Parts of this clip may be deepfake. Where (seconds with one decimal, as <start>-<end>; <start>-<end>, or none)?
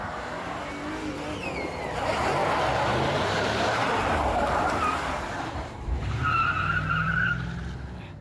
2.4-7.3